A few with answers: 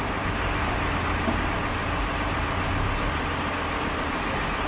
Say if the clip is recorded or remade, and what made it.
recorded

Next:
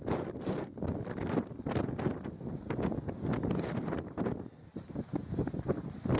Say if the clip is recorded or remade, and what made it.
recorded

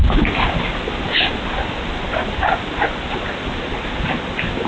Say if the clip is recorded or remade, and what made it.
recorded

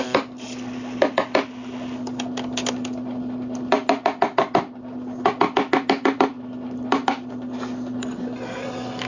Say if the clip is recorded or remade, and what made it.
recorded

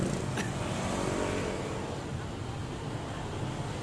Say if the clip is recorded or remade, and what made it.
recorded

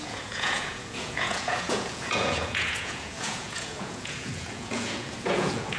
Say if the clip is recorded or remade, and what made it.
remade, vocoder, Vocos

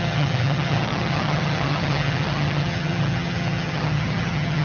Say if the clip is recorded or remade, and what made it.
remade, vocoder, HiFi-GAN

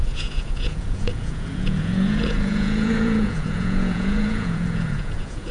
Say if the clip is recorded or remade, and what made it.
remade, vocoder, Vocos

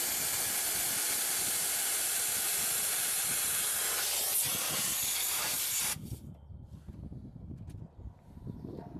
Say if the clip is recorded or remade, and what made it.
recorded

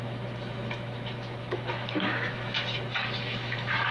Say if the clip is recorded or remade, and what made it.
remade, autoencoder, DAC-VAE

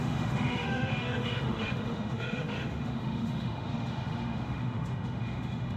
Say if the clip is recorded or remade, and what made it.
remade, autoencoder, DAC-VAE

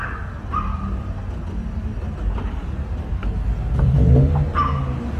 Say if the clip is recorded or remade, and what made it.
recorded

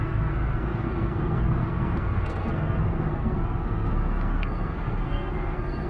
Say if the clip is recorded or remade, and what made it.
remade, codec, SNAC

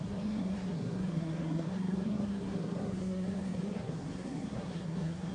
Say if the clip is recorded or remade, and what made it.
remade, codec, SNAC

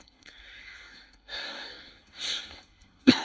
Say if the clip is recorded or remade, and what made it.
remade, codec, SNAC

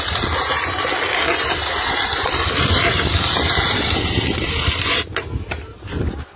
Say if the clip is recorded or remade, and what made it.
recorded